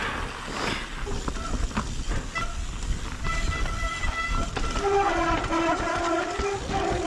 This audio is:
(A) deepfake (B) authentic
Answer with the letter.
B